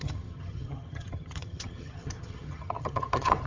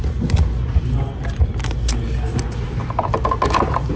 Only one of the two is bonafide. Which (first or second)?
second